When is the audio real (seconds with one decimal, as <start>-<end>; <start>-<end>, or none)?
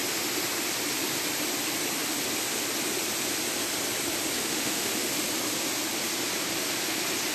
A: 0.0-4.4; 4.9-7.3